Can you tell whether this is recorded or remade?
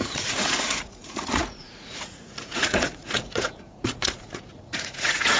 remade